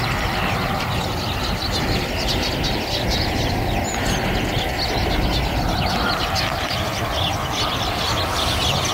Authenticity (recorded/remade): recorded